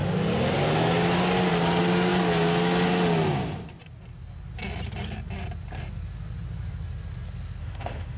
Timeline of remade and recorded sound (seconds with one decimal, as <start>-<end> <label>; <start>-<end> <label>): 0.0-7.6 recorded; 7.6-8.2 remade